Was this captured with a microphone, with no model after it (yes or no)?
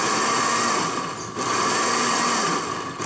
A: yes